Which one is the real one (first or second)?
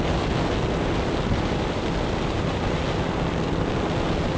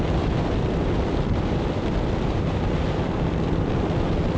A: first